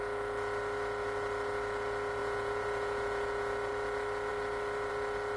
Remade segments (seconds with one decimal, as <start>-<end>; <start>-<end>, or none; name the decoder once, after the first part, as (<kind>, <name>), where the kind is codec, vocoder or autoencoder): 2.2-3.7 (vocoder, Vocos)